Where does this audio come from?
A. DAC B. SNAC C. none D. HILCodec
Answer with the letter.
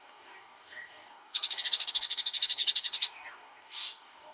A